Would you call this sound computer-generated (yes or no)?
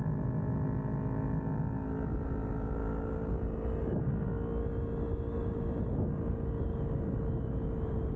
no